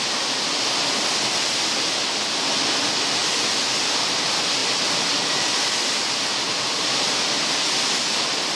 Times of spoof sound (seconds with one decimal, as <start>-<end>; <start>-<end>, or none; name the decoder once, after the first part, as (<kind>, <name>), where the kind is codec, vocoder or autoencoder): none